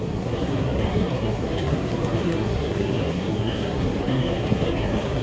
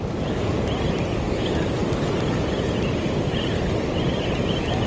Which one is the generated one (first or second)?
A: first